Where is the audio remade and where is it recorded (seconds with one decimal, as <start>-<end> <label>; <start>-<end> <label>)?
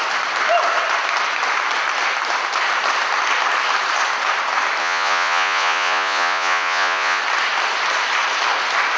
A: 0.0-4.8 recorded; 4.8-7.2 remade; 7.2-9.0 recorded